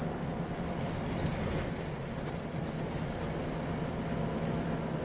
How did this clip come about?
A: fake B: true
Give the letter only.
B